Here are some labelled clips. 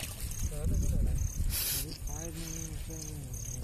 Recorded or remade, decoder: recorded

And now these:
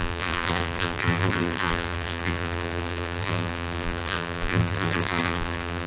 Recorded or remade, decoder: remade, vocoder, BigVGAN v2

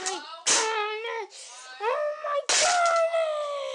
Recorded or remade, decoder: recorded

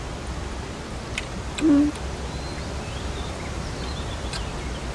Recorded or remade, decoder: recorded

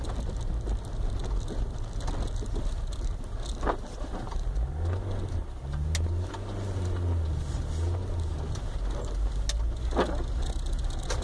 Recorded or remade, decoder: recorded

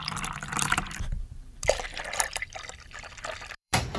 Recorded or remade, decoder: remade, vocoder, BigVGAN v2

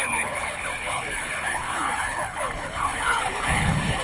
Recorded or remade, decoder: remade, codec, HILCodec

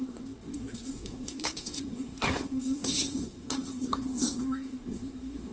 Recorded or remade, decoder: remade, codec, SNAC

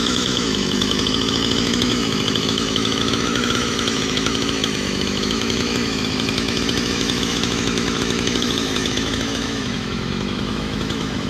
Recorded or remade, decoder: remade, autoencoder, DAC-VAE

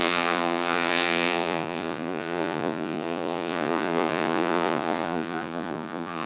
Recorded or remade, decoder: remade, vocoder, Vocos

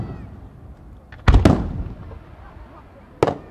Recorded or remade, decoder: recorded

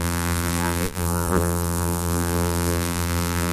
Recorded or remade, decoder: remade, vocoder, BigVGAN v2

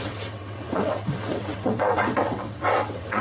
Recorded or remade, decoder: remade, vocoder, WaveNeXt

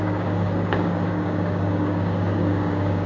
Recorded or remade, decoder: remade, codec, DAC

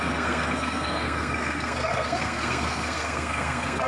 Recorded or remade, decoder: remade, codec, SNAC